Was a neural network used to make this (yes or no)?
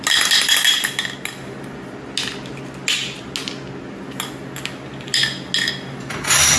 no